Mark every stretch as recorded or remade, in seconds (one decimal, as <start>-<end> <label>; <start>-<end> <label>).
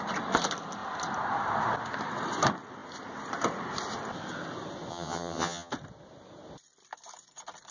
0.0-4.9 recorded; 4.9-5.7 remade; 5.7-7.7 recorded